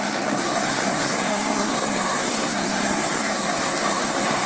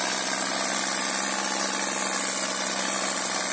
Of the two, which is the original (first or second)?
second